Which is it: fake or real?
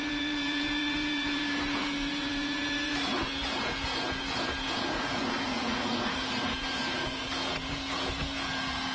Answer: fake